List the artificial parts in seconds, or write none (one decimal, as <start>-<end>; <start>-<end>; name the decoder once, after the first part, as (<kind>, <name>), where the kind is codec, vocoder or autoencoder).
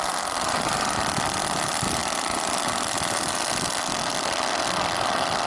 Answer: none